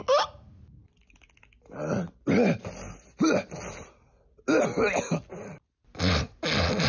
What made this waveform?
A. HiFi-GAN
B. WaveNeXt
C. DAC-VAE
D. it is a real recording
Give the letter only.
D